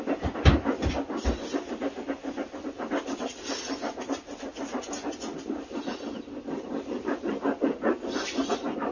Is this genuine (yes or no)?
yes